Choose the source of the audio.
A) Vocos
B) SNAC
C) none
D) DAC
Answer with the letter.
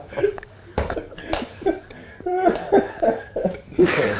D